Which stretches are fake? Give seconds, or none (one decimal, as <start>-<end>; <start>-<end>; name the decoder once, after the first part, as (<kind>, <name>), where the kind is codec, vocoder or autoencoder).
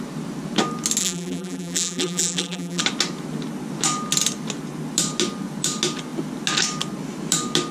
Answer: 1.0-2.8 (vocoder, BigVGAN v2)